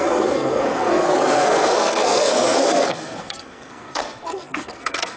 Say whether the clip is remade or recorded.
remade